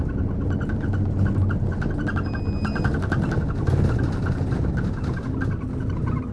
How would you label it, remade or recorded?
recorded